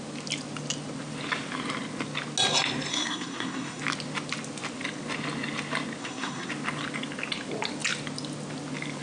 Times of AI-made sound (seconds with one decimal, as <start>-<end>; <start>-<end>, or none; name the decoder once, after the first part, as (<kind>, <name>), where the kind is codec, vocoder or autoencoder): 2.9-3.8 (codec, SNAC); 6.0-6.5